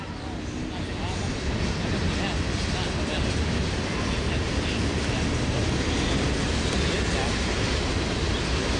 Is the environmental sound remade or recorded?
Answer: recorded